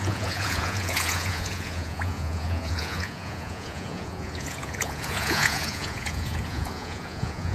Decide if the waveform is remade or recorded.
remade